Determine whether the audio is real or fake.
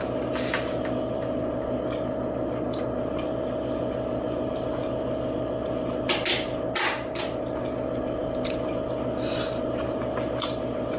real